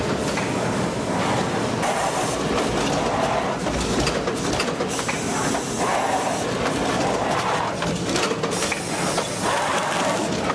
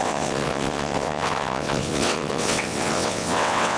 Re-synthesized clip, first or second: second